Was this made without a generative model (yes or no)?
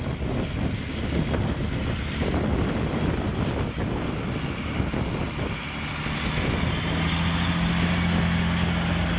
yes